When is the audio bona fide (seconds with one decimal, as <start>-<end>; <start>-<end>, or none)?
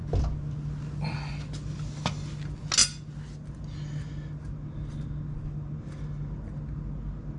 0.0-7.4